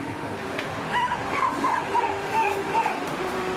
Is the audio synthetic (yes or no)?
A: yes